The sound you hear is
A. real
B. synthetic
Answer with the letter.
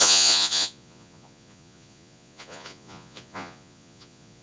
B